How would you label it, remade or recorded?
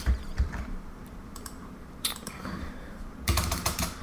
remade